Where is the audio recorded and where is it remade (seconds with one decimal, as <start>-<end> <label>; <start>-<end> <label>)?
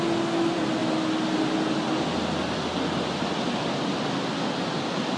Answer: 0.0-5.2 recorded